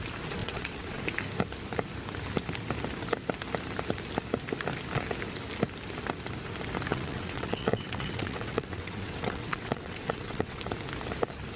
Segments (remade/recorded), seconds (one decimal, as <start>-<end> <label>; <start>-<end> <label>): 0.0-0.4 recorded; 0.4-1.0 remade; 1.0-6.9 recorded; 6.9-10.6 remade; 10.6-11.6 recorded